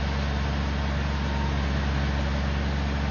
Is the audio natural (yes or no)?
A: yes